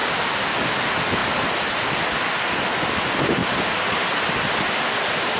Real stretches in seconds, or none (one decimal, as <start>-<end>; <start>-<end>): 0.0-5.4